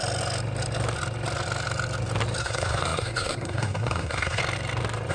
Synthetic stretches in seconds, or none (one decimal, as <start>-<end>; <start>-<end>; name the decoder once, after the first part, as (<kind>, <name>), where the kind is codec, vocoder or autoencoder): 2.4-4.4 (codec, SNAC)